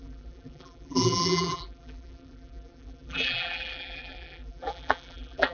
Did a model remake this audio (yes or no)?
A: yes